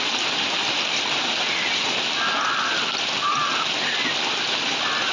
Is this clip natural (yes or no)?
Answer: yes